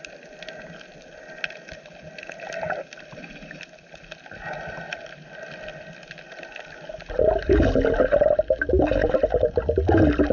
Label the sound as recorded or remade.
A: recorded